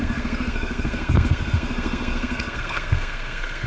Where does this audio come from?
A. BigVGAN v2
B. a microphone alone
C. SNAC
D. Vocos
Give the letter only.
C